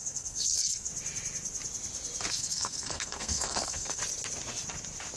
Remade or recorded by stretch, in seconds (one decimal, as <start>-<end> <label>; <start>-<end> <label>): 0.0-0.9 remade; 0.9-2.3 recorded; 2.3-4.0 remade; 4.0-5.2 recorded